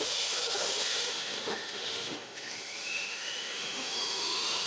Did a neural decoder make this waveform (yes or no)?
yes